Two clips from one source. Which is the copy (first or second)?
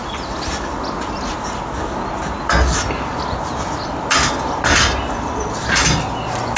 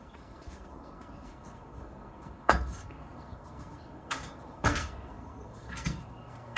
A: second